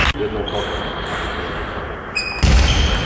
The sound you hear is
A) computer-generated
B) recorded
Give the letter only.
B